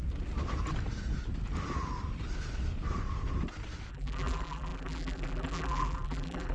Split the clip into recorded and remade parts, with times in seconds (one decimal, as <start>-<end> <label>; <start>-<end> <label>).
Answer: 0.0-3.9 recorded; 3.9-6.5 remade